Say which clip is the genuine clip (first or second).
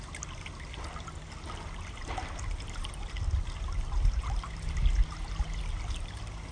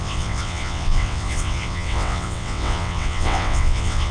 first